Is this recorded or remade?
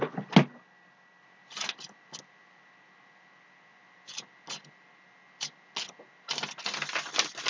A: recorded